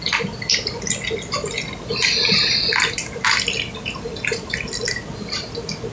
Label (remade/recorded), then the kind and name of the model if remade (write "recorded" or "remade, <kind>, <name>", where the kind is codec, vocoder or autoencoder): recorded